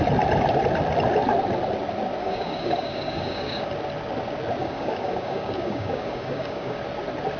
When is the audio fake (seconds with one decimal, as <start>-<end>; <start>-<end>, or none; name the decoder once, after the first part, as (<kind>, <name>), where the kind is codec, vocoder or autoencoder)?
2.2-3.7 (codec, DAC); 4.6-6.8